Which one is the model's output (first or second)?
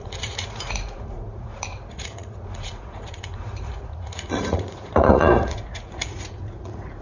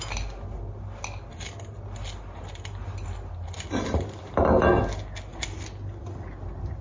first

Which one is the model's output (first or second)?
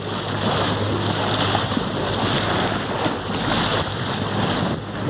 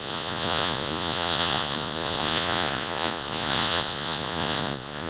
second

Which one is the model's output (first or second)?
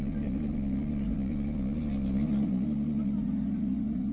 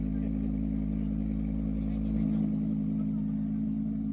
first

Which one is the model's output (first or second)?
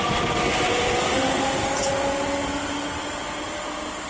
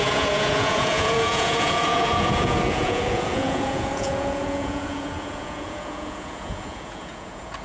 second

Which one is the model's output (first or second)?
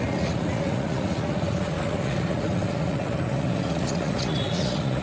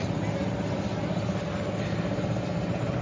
first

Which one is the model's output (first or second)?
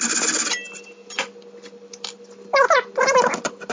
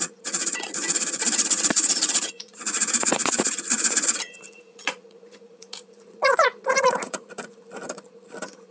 second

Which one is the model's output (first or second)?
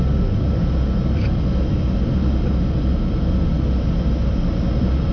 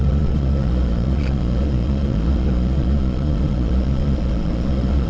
second